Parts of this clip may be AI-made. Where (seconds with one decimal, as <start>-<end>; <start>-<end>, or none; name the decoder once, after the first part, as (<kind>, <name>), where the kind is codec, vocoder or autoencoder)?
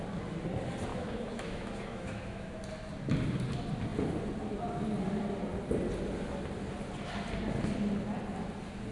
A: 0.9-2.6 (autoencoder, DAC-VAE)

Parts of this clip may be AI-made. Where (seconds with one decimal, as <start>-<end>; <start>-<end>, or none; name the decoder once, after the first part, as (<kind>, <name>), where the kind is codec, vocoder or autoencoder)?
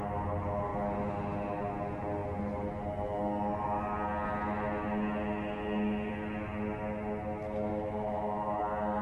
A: 7.7-8.6 (autoencoder, DAC-VAE)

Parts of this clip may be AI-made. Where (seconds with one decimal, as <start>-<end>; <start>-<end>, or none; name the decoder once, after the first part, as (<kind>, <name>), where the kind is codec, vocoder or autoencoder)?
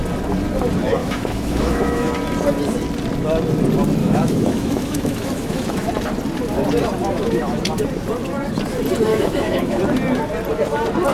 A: 1.0-2.1 (autoencoder, DAC-VAE); 4.0-5.9; 7.0-7.6; 9.1-9.8